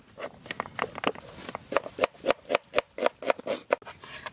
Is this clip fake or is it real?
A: real